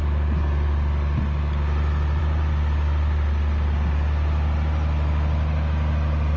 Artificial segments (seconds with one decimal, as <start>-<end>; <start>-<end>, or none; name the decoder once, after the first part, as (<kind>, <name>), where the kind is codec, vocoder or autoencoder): none